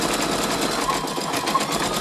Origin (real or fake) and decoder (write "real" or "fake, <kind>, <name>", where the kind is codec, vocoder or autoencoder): real